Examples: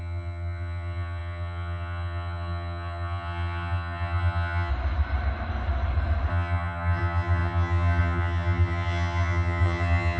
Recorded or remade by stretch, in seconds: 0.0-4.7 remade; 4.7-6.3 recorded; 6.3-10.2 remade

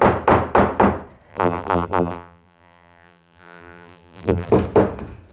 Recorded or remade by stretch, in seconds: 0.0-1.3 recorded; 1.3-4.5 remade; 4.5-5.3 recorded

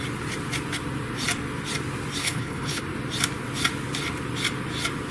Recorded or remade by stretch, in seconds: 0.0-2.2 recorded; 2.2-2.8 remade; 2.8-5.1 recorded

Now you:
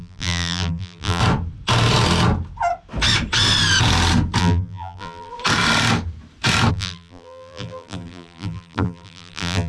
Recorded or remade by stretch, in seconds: 0.0-1.2 remade; 1.2-4.4 recorded; 4.4-5.3 remade; 5.3-6.7 recorded; 6.7-9.7 remade